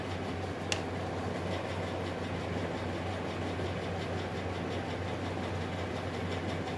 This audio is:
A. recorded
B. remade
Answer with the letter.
A